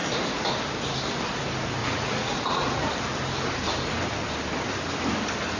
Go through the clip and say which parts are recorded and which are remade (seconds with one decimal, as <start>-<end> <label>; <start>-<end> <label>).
0.0-1.8 recorded; 1.8-2.9 remade; 2.9-5.6 recorded